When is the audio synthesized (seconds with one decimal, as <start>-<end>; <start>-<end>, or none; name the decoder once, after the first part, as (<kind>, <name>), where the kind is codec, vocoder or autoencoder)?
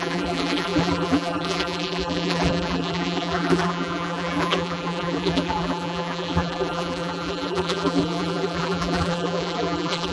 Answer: 0.0-10.1 (vocoder, BigVGAN v2)